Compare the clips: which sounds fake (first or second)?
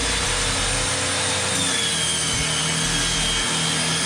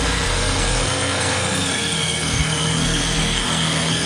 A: second